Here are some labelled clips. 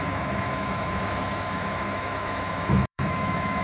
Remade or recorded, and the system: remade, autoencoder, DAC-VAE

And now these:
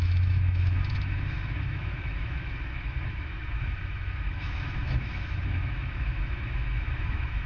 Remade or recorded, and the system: remade, autoencoder, DAC-VAE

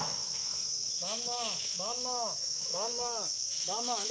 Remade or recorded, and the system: remade, autoencoder, DAC-VAE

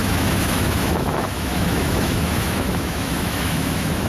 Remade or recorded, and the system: remade, autoencoder, DAC-VAE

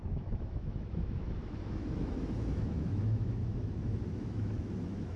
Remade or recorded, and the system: remade, autoencoder, DAC-VAE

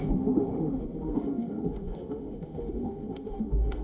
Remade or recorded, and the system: remade, autoencoder, DAC-VAE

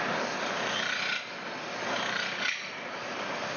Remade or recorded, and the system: recorded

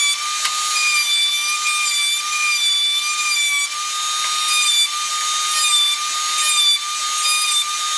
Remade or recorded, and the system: recorded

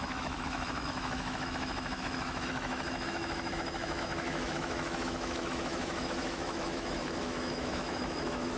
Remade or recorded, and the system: remade, autoencoder, DAC-VAE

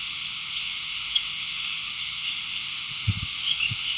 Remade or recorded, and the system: remade, autoencoder, DAC-VAE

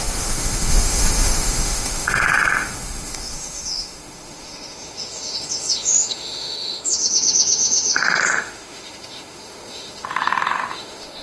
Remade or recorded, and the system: remade, autoencoder, DAC-VAE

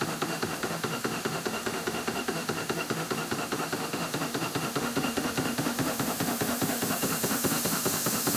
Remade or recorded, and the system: remade, autoencoder, DAC-VAE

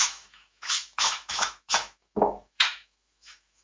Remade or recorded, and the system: remade, autoencoder, DAC-VAE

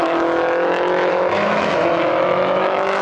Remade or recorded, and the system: remade, autoencoder, DAC-VAE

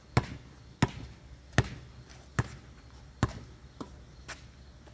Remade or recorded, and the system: recorded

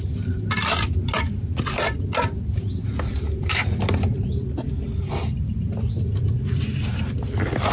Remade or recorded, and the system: recorded